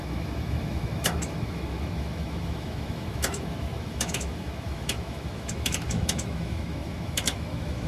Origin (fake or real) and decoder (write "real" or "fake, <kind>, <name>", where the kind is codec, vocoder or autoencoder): fake, autoencoder, DAC-VAE